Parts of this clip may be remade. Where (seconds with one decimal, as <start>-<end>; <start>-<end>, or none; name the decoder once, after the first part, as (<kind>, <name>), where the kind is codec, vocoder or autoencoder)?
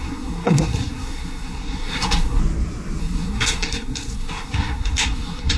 0.0-2.4 (codec, SNAC); 3.0-5.6